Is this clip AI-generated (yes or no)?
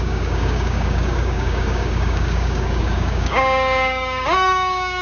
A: yes